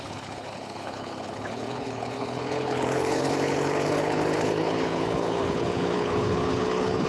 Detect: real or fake fake